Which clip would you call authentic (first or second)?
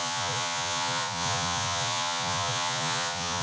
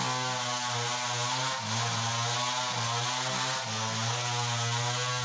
second